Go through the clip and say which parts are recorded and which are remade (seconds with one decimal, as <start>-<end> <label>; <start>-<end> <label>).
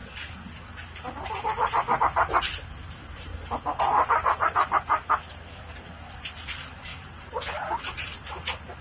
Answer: 0.0-2.0 recorded; 2.0-3.3 remade; 3.3-5.6 recorded; 5.6-8.8 remade